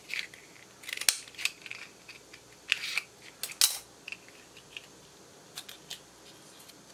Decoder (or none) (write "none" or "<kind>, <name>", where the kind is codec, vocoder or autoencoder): none